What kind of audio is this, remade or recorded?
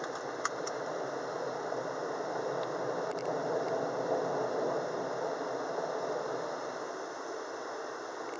recorded